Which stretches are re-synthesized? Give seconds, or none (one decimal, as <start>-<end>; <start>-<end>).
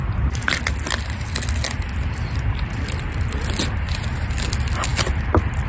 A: none